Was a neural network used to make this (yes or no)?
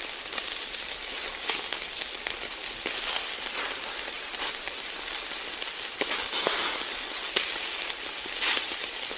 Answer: no